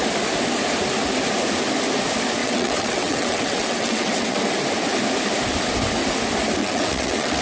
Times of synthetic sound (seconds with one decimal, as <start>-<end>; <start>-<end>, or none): 2.4-4.4; 6.6-7.4